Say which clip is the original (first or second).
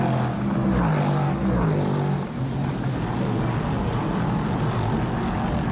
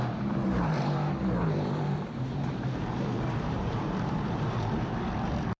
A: first